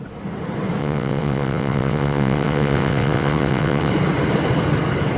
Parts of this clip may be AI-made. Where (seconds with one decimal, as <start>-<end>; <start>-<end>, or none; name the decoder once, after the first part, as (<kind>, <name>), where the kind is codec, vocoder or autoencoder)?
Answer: 0.8-3.9 (vocoder, WaveNeXt)